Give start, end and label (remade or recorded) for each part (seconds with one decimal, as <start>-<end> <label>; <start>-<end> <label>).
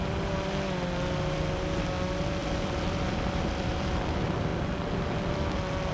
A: 0.0-2.4 recorded; 2.4-3.8 remade; 3.8-5.9 recorded